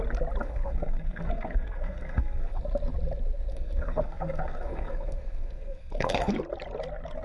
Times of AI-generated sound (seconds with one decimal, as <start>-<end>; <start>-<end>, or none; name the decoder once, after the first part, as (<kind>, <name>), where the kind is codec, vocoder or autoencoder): 0.4-2.6 (codec, SNAC); 3.5-6.4